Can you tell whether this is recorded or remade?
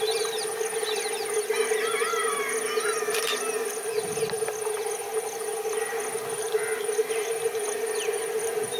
recorded